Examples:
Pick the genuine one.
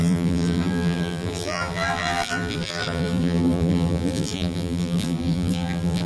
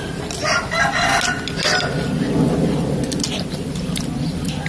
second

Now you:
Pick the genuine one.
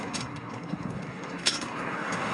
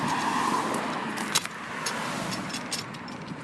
second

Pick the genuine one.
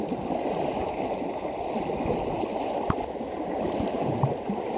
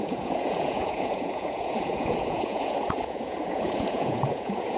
first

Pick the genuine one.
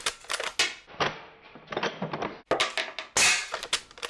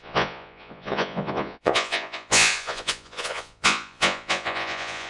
first